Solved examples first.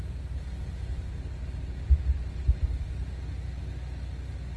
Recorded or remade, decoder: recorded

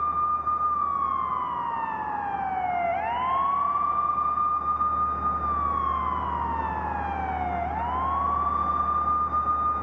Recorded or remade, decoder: recorded